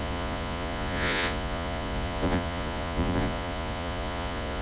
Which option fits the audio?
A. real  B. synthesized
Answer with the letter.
B